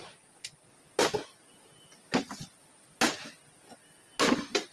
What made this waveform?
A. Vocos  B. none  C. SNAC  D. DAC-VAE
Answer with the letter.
B